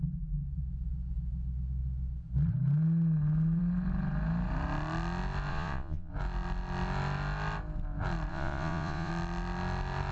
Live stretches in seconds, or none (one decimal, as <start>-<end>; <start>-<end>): 0.0-5.5; 6.1-8.3; 9.1-10.1